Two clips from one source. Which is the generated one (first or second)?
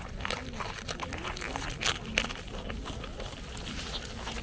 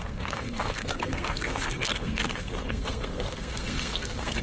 second